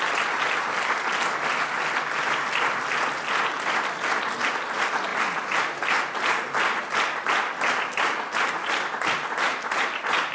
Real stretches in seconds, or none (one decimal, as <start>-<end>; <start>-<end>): 0.0-10.3